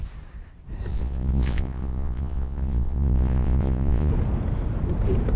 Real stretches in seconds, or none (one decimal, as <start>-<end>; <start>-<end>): 0.0-0.9; 4.1-5.4